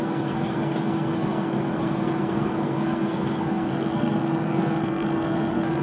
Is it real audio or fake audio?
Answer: fake